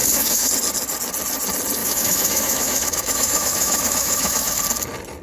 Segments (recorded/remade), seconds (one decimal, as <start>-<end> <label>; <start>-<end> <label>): 0.0-0.5 remade; 0.5-1.8 recorded; 1.8-4.6 remade; 4.6-5.2 recorded

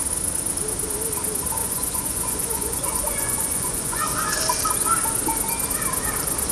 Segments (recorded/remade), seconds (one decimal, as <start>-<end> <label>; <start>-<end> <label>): 0.0-1.6 recorded; 1.6-4.4 remade; 4.4-6.5 recorded

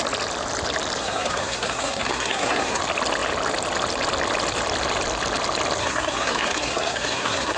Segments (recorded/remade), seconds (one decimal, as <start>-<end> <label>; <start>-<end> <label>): 0.0-1.0 recorded; 1.0-2.8 remade; 2.8-5.8 recorded; 5.8-7.6 remade